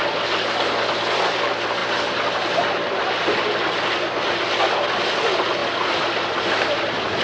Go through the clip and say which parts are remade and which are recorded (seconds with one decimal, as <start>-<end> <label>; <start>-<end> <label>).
0.0-7.2 recorded